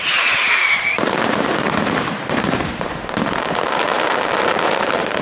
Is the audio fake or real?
fake